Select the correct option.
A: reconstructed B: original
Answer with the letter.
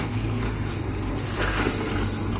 A